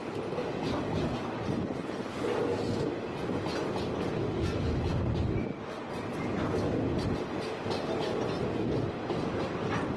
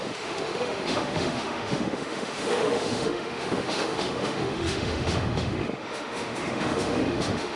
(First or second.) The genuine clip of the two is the first